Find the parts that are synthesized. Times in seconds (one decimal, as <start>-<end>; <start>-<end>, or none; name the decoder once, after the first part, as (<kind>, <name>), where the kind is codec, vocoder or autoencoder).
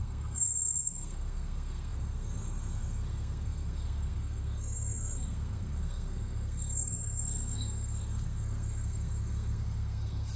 0.0-10.4 (codec, SNAC)